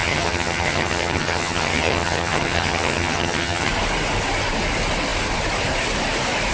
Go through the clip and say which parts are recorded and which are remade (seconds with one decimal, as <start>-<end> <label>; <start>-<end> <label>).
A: 0.0-3.7 remade; 3.7-6.5 recorded